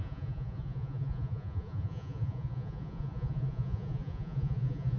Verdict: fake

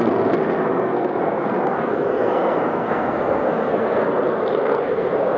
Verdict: fake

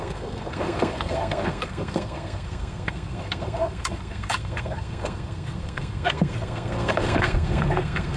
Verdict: fake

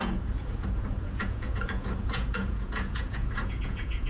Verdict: fake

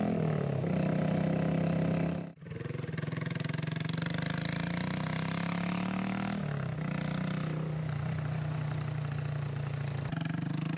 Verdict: real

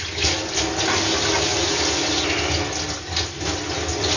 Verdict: real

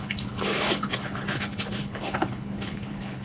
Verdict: fake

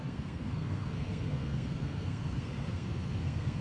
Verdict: fake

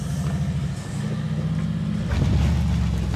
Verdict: real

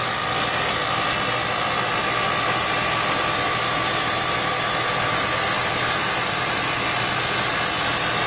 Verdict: real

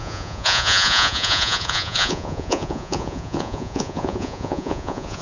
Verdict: fake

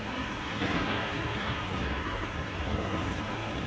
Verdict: fake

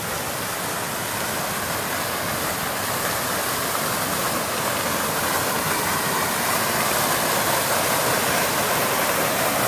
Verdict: real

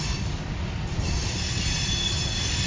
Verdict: real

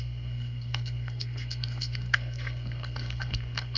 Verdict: fake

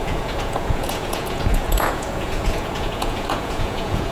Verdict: fake